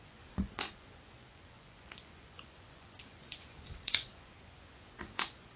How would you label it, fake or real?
fake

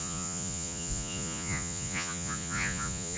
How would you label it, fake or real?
fake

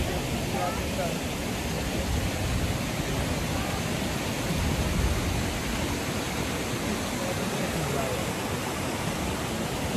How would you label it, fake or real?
real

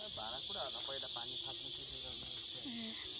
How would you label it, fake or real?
real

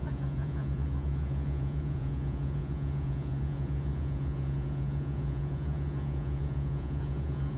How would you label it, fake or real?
fake